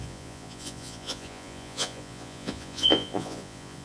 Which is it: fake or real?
fake